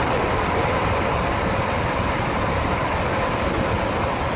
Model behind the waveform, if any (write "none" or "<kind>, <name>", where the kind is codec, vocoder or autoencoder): none